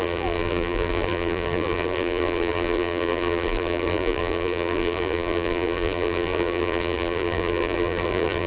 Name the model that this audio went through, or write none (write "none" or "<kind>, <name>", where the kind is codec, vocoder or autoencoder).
vocoder, BigVGAN v2